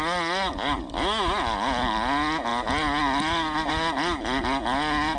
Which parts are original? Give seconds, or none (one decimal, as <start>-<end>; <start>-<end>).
0.0-5.2